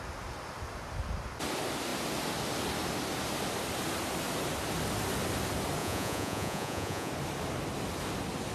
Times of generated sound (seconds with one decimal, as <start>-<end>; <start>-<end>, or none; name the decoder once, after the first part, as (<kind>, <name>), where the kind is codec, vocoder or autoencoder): 5.8-7.1 (vocoder, Vocos)